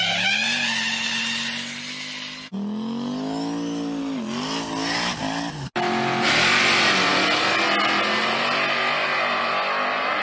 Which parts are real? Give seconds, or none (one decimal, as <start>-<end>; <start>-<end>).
0.0-10.2